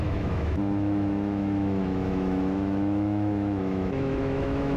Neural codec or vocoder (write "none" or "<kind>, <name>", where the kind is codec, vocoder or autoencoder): autoencoder, DAC-VAE